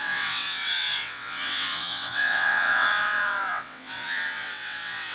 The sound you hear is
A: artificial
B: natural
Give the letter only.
A